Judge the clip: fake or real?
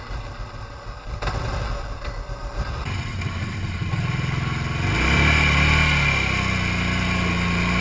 real